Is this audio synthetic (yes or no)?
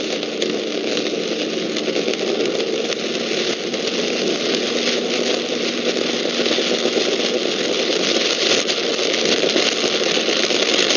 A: no